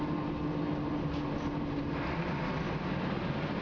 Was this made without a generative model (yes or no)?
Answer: yes